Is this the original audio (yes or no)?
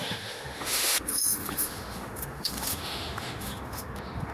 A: no